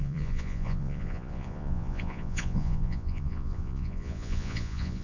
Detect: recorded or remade remade